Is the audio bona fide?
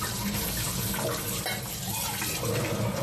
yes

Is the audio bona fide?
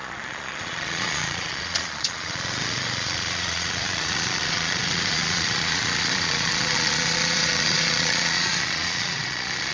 no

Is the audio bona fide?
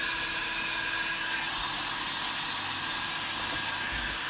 yes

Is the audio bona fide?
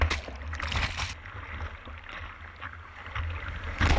yes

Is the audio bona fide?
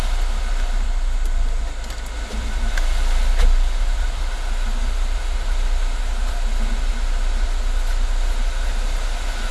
yes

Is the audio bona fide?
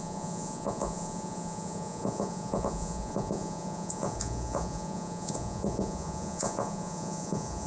no